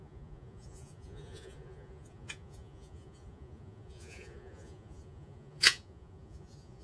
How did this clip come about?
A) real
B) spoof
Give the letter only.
B